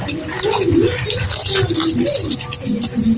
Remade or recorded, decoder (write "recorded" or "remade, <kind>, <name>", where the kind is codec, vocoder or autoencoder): recorded